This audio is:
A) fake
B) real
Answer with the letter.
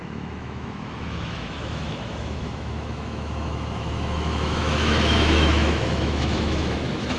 A